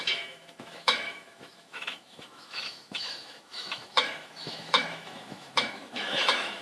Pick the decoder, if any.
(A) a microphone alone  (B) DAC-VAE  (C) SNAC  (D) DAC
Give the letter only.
B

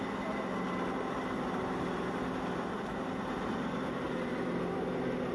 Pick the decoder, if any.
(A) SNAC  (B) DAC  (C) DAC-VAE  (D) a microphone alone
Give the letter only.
D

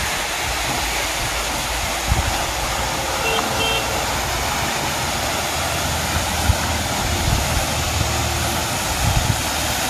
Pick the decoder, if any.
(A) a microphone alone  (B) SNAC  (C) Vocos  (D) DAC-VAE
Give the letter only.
A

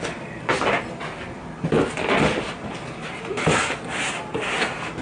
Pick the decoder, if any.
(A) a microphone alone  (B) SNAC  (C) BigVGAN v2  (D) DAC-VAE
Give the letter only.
A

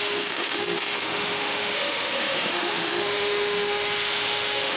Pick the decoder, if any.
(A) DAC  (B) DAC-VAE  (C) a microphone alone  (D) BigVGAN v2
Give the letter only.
B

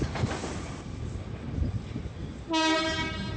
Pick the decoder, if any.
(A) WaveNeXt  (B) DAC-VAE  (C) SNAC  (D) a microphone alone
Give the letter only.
D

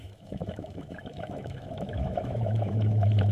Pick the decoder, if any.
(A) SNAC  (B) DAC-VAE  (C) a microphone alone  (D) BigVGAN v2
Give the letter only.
B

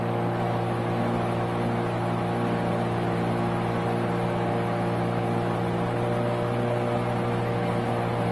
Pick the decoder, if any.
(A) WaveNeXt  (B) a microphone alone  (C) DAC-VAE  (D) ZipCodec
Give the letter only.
B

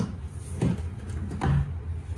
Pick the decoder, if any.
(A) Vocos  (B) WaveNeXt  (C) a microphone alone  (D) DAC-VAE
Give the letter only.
C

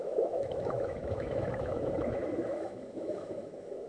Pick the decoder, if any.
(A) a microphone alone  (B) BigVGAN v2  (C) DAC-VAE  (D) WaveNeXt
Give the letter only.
C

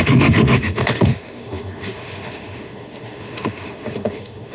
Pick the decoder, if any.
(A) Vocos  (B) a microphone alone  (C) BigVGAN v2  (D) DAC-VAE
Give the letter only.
D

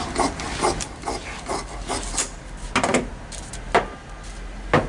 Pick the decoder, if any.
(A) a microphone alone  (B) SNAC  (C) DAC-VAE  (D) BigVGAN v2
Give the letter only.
A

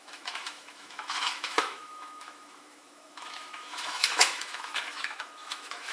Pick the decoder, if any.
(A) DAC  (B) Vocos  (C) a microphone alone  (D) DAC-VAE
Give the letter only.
D